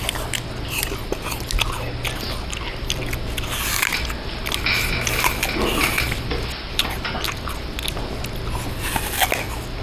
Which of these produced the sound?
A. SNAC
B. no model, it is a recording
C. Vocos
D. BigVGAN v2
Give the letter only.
B